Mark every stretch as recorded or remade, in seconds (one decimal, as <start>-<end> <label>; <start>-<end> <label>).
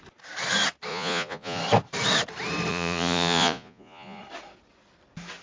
0.0-0.9 recorded; 0.9-1.6 remade; 1.6-2.7 recorded; 2.7-4.2 remade; 4.2-5.4 recorded